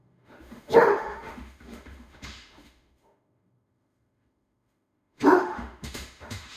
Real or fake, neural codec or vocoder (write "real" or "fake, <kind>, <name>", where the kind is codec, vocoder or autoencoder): fake, autoencoder, DAC-VAE